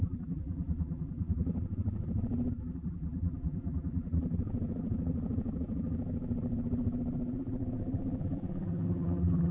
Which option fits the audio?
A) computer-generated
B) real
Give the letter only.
A